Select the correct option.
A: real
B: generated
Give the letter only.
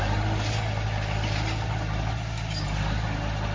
A